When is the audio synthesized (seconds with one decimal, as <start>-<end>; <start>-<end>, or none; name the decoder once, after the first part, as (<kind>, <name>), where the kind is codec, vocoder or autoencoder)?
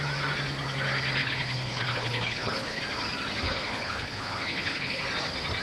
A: 1.2-2.8 (codec, HILCodec); 3.5-5.0